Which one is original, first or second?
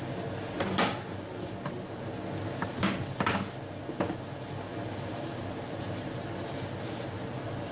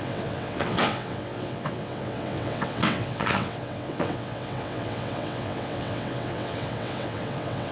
first